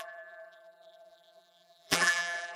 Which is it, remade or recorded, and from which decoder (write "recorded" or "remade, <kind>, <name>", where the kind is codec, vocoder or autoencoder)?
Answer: remade, vocoder, BigVGAN v2